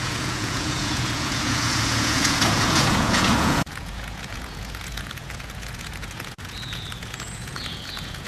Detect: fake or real fake